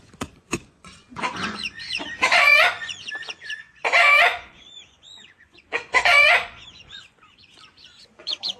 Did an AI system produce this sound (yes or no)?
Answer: yes